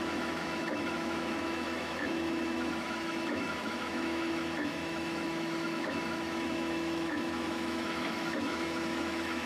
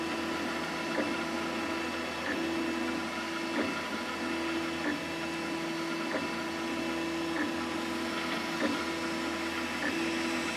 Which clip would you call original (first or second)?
second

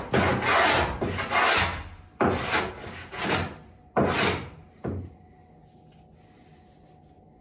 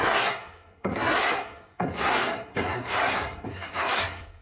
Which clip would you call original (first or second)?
first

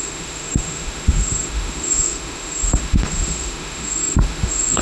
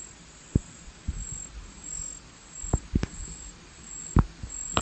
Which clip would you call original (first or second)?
second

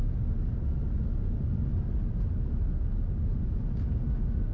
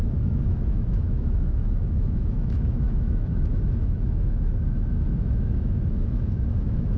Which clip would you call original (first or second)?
first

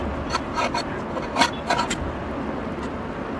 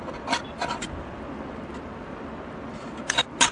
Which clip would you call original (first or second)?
first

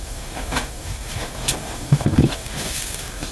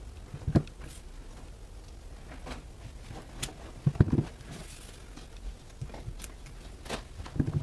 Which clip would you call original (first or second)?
second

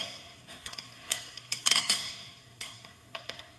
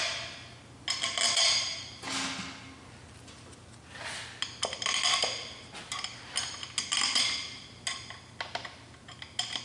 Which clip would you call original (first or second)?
second